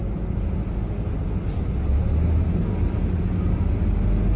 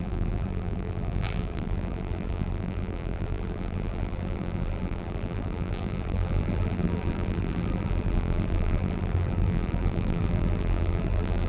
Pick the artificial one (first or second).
second